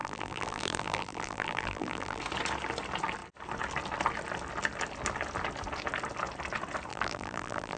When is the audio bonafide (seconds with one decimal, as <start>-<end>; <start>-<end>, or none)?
2.2-6.9